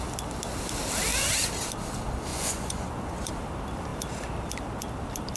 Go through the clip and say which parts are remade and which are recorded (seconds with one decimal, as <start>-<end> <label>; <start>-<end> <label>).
0.0-2.3 recorded; 2.3-3.3 remade; 3.3-5.4 recorded

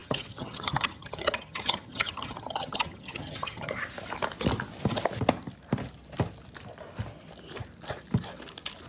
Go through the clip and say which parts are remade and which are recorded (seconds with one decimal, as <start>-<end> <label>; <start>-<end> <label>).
0.0-3.8 remade; 3.8-8.9 recorded

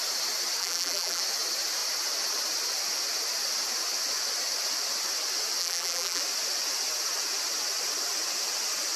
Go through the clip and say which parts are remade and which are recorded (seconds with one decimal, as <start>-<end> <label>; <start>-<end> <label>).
0.0-0.6 recorded; 0.6-1.2 remade; 1.2-5.6 recorded; 5.6-6.2 remade; 6.2-9.0 recorded

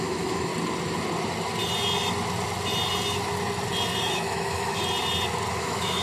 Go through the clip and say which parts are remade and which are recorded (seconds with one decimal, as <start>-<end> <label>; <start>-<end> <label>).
0.0-0.5 remade; 0.5-4.1 recorded; 4.1-4.8 remade; 4.8-5.5 recorded; 5.5-6.0 remade

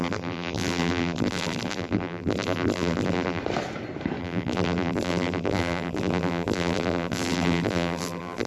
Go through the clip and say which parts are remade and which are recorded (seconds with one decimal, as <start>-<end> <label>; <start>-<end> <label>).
0.0-3.4 remade; 3.4-4.2 recorded; 4.2-8.5 remade

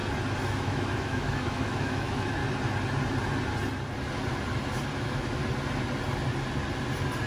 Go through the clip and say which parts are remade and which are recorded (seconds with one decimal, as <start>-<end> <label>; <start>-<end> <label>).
0.0-0.5 recorded; 0.5-2.4 remade; 2.4-5.0 recorded; 5.0-5.4 remade; 5.4-7.3 recorded